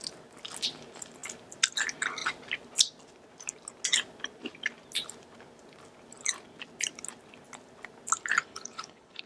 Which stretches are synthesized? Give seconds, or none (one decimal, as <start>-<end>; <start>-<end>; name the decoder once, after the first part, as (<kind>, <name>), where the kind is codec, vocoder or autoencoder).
8.4-9.3 (codec, HILCodec)